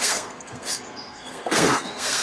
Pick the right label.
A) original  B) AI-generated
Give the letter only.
B